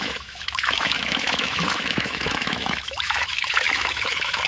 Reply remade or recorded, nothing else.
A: remade